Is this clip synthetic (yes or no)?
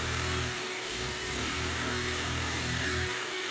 yes